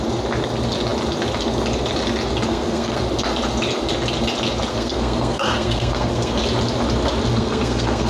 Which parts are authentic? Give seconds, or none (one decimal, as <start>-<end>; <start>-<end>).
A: 0.0-2.5; 3.0-4.7; 6.4-7.3